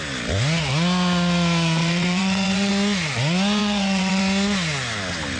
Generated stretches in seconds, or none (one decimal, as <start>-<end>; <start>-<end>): 1.8-2.7; 3.6-4.2